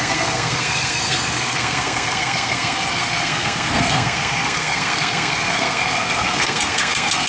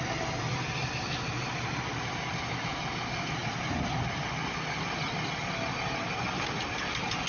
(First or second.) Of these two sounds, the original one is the second